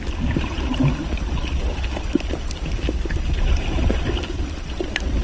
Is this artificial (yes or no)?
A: yes